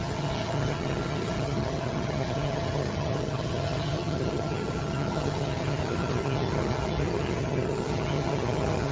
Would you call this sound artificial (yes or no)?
yes